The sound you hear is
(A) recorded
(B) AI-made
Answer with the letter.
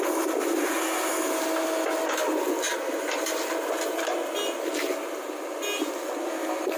A